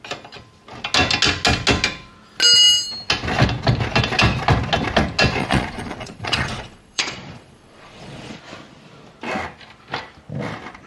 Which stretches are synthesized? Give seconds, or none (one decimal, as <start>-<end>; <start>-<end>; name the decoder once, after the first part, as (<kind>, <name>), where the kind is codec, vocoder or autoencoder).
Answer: 5.4-8.4 (vocoder, Vocos)